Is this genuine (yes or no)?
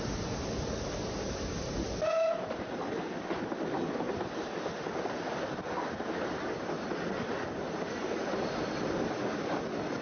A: yes